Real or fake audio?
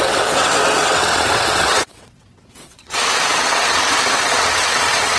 fake